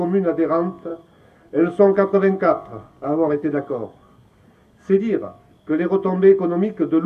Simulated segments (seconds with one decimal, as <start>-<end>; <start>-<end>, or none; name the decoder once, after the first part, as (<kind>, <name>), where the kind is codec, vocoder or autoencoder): 0.9-5.0 (codec, DAC)